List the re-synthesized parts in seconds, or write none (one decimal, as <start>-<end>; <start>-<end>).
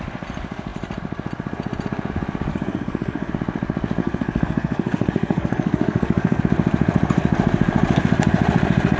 2.5-3.3; 4.0-6.4